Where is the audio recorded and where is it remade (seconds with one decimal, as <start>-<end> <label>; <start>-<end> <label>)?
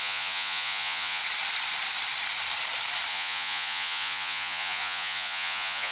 0.0-1.2 remade; 1.2-3.1 recorded; 3.1-5.9 remade